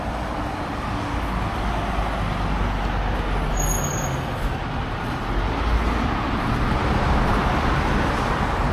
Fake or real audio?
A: real